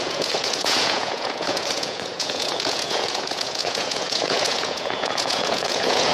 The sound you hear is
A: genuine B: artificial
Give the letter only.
B